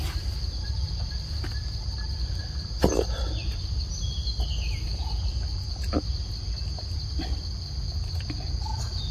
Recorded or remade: recorded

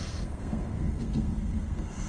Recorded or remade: remade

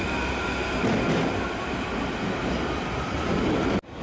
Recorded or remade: recorded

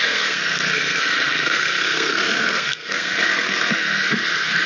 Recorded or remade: remade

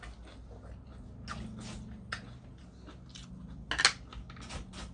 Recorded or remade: recorded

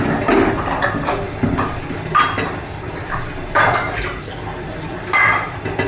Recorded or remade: recorded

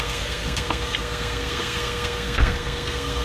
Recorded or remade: remade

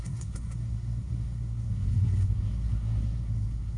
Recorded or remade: remade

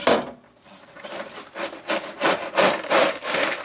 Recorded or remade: recorded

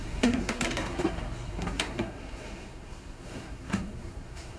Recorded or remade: remade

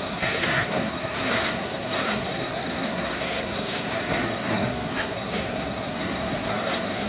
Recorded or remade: remade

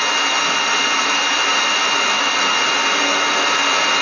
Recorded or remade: recorded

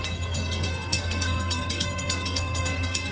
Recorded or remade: remade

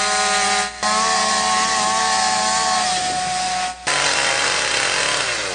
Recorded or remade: recorded